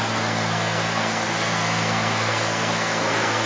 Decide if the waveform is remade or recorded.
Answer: remade